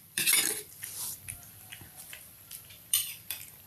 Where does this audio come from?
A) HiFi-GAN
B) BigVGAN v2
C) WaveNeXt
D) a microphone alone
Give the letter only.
B